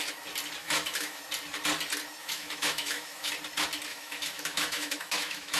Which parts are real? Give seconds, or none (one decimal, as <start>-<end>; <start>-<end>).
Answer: 0.0-0.6; 1.2-2.2; 3.3-3.9